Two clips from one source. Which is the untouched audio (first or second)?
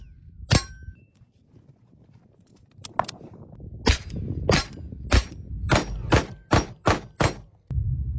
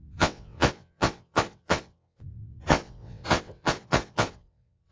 first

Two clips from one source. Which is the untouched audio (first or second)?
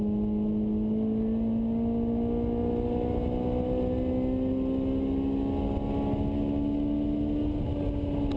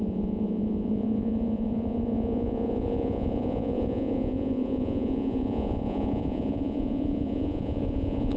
first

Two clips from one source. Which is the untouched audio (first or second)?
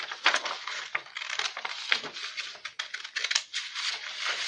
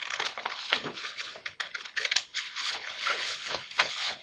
first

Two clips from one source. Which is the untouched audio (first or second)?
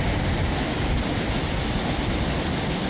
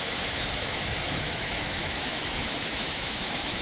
first